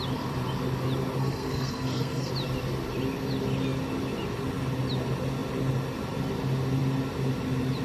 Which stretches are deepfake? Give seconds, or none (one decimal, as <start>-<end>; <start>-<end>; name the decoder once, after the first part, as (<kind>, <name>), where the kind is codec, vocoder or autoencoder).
1.2-2.3 (codec, SNAC)